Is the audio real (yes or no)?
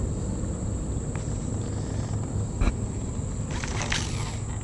yes